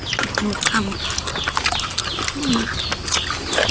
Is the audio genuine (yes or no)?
yes